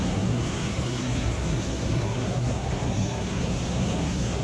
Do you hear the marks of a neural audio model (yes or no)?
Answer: yes